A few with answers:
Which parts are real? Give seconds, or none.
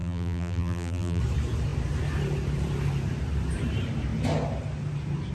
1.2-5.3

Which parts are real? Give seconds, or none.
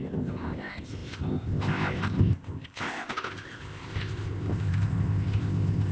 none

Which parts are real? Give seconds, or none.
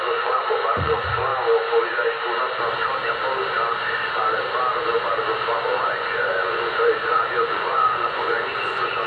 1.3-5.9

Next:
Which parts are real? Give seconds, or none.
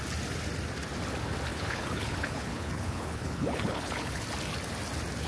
0.0-1.5; 4.2-5.3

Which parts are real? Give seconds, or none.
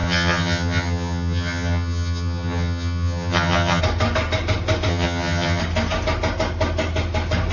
3.8-4.9; 5.6-7.5